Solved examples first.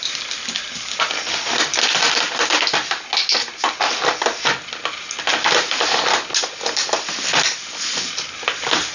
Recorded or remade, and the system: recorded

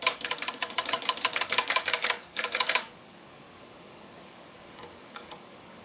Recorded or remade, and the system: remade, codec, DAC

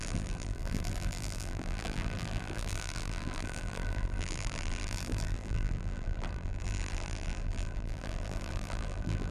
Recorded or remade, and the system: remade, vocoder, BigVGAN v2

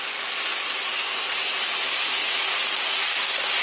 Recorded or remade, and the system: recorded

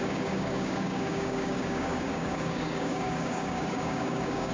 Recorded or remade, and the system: remade, codec, DAC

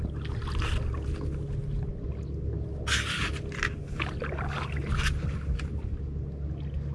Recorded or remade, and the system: recorded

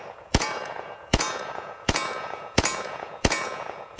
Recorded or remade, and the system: remade, vocoder, Vocos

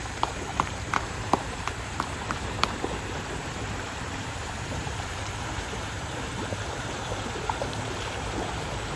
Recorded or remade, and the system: remade, vocoder, BigVGAN v2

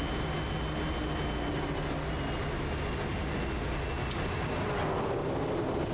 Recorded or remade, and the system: recorded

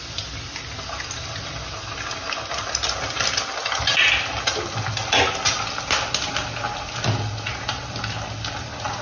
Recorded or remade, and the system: recorded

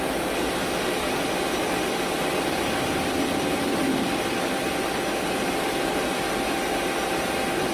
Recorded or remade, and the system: recorded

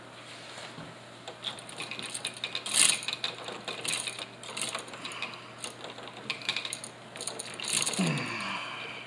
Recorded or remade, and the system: recorded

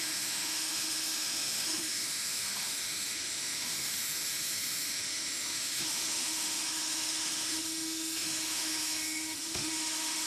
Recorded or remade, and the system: remade, autoencoder, DAC-VAE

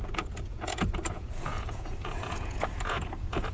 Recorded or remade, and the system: remade, vocoder, Vocos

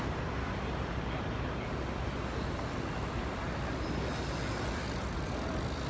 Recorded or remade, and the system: recorded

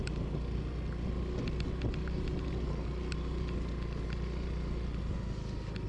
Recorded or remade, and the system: recorded